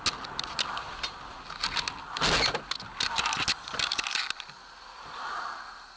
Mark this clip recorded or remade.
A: recorded